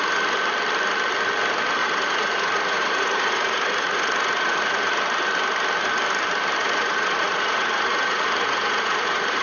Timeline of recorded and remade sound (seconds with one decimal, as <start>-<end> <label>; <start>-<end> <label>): 0.0-1.8 recorded; 1.8-4.9 remade; 4.9-6.6 recorded; 6.6-9.4 remade